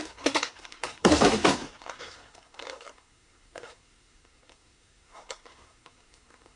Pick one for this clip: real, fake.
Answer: fake